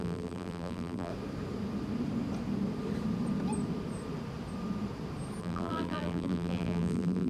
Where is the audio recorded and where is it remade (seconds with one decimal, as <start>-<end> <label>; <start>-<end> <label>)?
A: 0.0-1.1 remade; 1.1-5.4 recorded; 5.4-7.3 remade